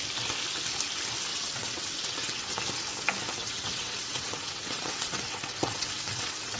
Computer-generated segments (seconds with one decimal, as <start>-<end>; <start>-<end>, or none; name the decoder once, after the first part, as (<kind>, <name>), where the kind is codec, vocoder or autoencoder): 1.3-2.6 (vocoder, WaveNeXt); 3.4-6.6